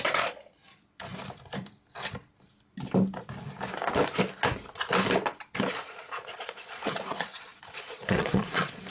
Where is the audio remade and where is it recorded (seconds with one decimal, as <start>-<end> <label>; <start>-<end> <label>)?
0.0-1.1 remade; 1.1-5.7 recorded; 5.7-8.9 remade